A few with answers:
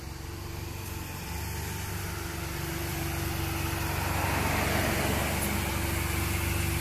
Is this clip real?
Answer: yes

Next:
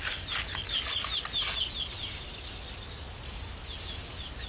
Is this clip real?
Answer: yes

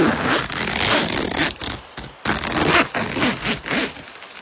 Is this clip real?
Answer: yes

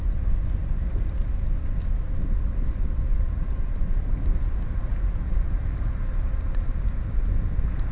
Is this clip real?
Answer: yes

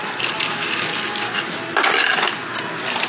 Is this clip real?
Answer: yes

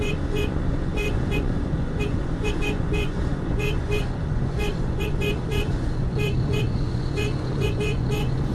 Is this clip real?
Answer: no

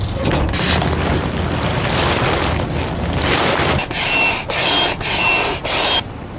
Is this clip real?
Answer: yes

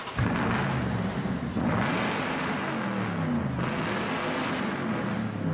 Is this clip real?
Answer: yes